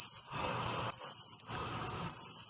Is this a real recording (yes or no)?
yes